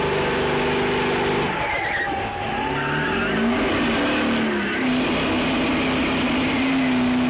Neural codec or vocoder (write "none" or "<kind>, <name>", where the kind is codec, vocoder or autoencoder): none